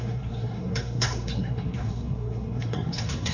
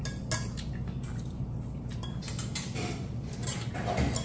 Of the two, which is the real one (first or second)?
second